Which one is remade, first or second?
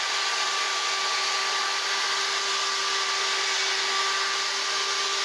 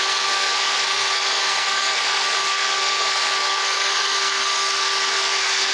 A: second